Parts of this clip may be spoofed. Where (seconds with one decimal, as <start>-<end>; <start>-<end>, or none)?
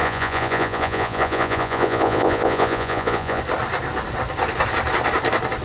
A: 0.0-3.4